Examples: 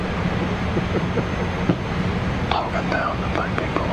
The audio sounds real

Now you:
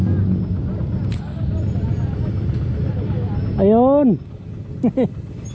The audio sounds real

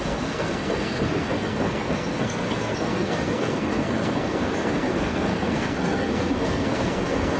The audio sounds fake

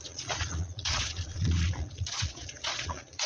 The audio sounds fake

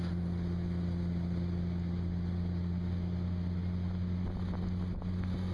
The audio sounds real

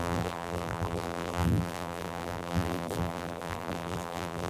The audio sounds fake